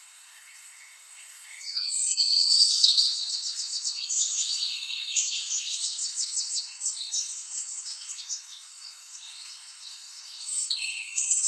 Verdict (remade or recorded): remade